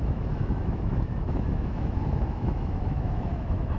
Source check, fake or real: fake